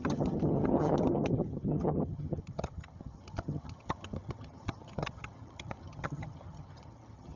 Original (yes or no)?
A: no